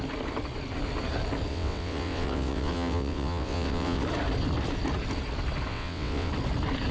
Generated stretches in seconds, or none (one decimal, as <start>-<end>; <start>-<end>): 1.5-4.0; 5.7-6.3